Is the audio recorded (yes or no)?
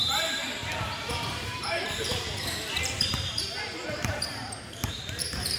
no